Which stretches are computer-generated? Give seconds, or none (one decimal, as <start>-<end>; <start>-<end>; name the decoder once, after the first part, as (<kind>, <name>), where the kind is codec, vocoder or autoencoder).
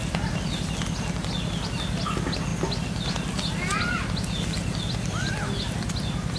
none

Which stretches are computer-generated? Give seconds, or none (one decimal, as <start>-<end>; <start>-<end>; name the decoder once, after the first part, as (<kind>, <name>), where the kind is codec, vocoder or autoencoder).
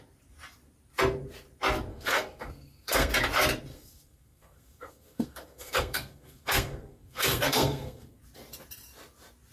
1.9-3.1 (codec, SNAC); 3.7-8.2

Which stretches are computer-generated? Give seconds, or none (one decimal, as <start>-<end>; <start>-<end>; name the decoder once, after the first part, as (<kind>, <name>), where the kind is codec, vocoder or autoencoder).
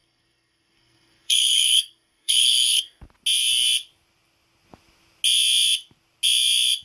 0.0-3.0 (codec, SNAC)